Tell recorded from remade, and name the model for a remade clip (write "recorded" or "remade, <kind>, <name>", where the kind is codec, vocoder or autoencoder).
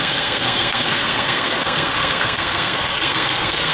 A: remade, codec, SNAC